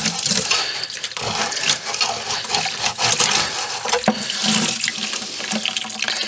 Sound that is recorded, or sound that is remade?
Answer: recorded